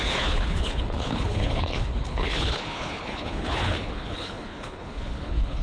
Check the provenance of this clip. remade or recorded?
remade